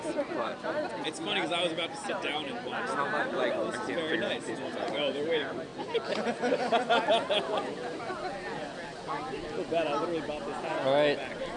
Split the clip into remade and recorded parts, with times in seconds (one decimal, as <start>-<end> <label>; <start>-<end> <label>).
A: 0.0-1.0 remade; 1.0-4.1 recorded; 4.1-5.7 remade; 5.7-10.6 recorded; 10.6-11.6 remade